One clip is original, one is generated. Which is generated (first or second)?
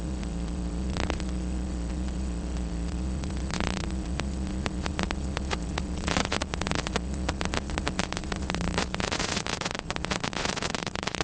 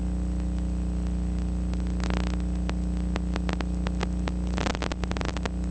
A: first